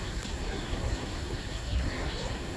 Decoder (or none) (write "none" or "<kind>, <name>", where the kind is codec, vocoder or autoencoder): codec, SNAC